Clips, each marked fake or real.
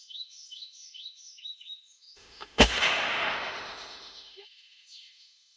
fake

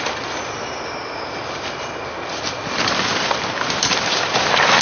real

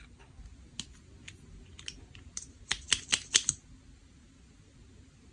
real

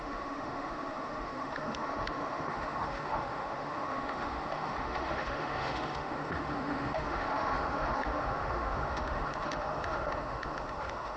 fake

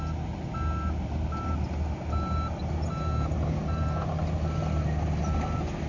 real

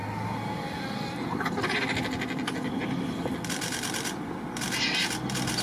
real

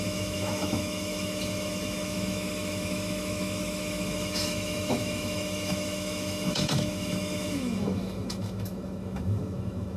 fake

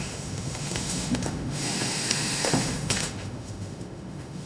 fake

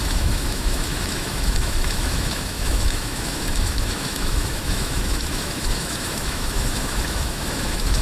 fake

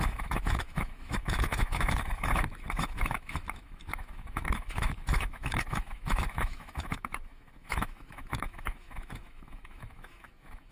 fake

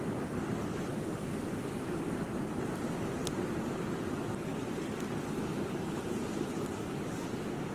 real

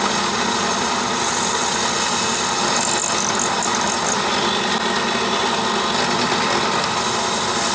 real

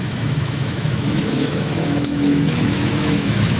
fake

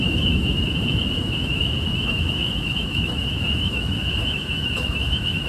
fake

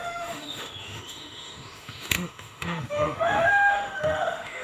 fake